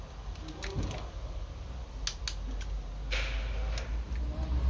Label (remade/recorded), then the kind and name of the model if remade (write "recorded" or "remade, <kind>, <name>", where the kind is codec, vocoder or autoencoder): recorded